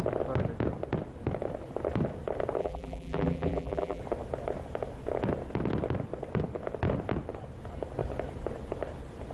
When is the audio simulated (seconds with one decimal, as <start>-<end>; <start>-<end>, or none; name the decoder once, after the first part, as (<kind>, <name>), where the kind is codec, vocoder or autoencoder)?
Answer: 2.6-4.0 (vocoder, BigVGAN v2)